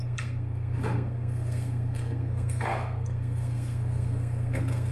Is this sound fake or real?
fake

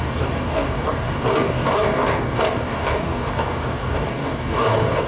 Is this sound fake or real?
fake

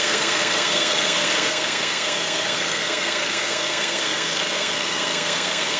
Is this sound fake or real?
fake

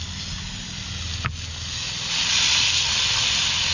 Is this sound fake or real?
real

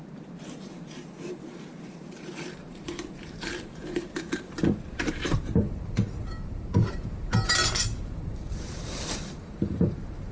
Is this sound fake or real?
fake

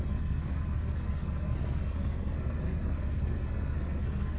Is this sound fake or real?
fake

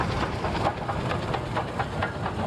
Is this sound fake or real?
real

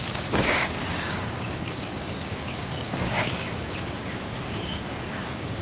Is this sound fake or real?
fake